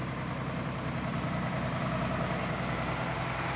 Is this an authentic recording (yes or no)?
yes